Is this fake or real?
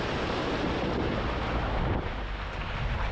real